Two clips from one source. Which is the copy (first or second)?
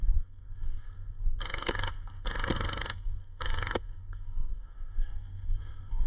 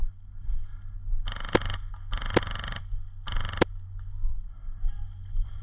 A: first